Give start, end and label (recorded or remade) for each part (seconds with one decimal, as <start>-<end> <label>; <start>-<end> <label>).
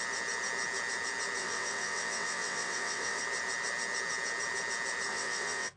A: 0.0-1.4 recorded; 1.4-3.2 remade; 3.2-5.1 recorded; 5.1-5.8 remade